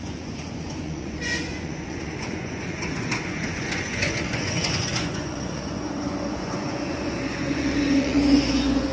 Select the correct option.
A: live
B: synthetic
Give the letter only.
B